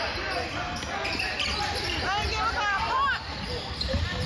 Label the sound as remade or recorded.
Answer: recorded